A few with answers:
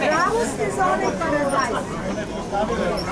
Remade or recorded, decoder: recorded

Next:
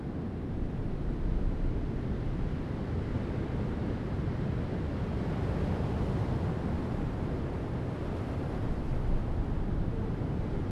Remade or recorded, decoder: recorded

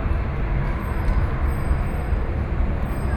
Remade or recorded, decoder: recorded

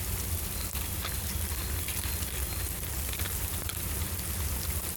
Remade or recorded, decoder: recorded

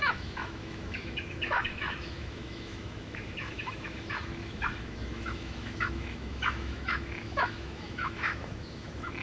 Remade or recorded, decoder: remade, autoencoder, DAC-VAE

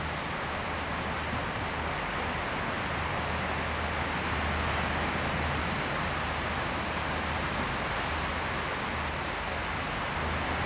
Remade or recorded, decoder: recorded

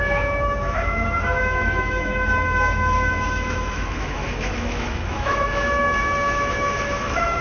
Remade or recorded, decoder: remade, autoencoder, DAC-VAE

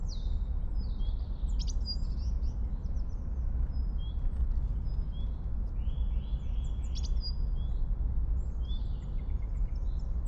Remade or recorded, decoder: recorded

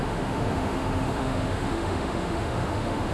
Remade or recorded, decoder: remade, autoencoder, DAC-VAE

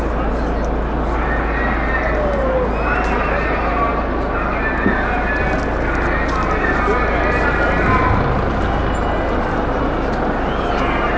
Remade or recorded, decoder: recorded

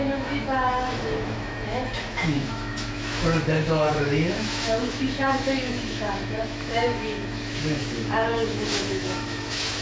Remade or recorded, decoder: remade, autoencoder, DAC-VAE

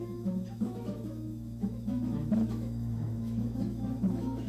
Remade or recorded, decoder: remade, autoencoder, DAC-VAE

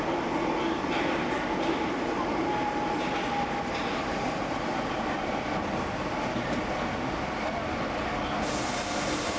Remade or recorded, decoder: recorded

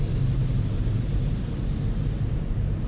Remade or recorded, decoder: recorded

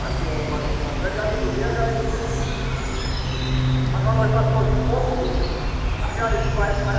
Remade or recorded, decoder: recorded